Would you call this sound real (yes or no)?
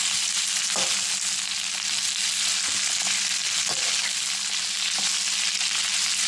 yes